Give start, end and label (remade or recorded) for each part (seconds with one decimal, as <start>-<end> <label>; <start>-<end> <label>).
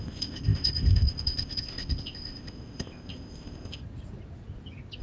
0.0-3.8 remade; 3.8-5.0 recorded